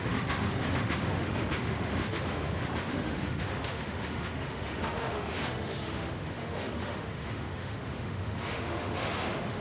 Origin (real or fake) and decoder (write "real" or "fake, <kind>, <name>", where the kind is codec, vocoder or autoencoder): fake, autoencoder, DAC-VAE